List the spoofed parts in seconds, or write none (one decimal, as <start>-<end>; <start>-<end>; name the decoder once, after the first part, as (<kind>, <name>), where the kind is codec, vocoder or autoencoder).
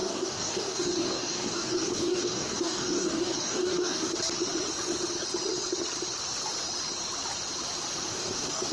0.0-4.2 (codec, DAC); 8.1-8.7